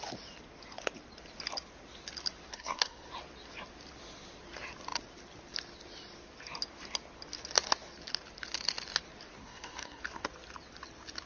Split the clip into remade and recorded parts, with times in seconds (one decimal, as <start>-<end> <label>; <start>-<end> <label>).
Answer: 0.0-2.5 recorded; 2.5-3.1 remade; 3.1-9.4 recorded; 9.4-10.0 remade; 10.0-11.3 recorded